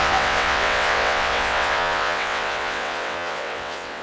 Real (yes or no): no